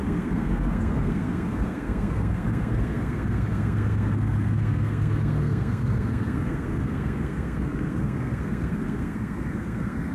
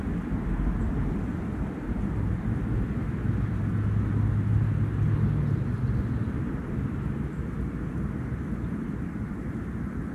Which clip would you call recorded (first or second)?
second